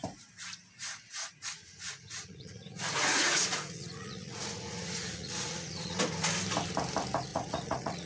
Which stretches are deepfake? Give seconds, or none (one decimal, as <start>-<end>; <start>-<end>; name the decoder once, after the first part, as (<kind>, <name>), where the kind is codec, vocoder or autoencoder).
1.2-6.0 (vocoder, Vocos); 7.3-8.1